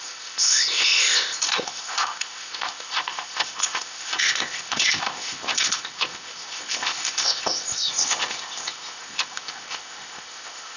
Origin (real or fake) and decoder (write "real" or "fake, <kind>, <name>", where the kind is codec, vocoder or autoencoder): fake, codec, ZipCodec